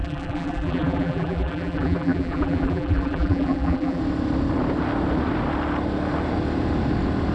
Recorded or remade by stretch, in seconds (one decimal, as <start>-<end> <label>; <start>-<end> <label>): 0.0-4.0 remade; 4.0-7.3 recorded